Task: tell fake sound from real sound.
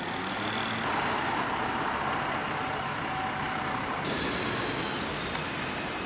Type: real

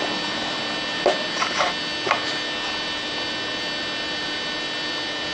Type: real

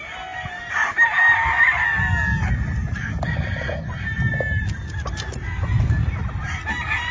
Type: real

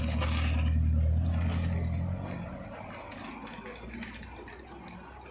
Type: real